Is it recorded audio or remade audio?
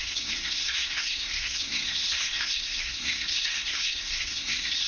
remade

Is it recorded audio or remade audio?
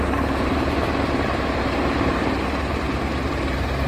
remade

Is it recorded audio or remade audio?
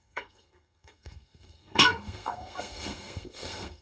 remade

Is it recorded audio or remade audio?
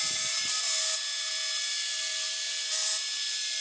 recorded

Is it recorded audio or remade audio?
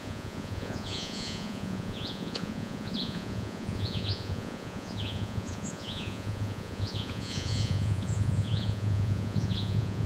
remade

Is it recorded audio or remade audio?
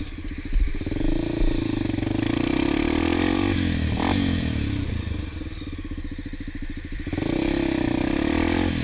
recorded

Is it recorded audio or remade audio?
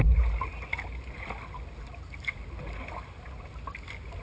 recorded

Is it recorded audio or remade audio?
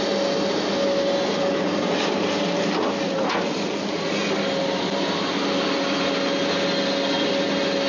recorded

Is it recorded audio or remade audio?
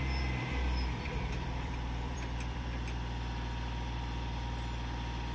remade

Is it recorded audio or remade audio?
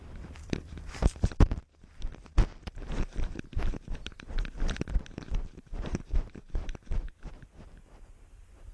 remade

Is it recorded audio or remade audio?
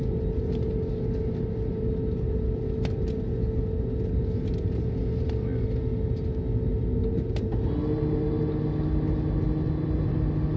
recorded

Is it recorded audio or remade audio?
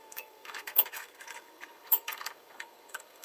remade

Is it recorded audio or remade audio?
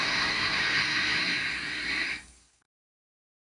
remade